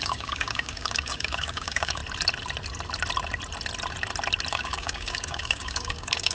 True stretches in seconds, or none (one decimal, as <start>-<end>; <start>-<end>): 2.0-4.5